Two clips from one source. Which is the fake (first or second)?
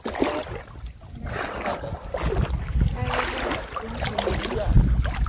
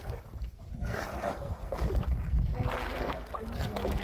second